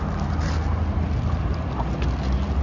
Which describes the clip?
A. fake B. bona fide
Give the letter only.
B